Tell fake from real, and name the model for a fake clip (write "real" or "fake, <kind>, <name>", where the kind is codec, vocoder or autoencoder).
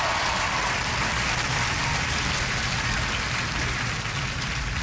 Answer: real